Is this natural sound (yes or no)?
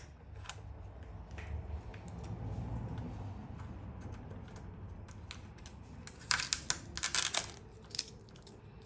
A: yes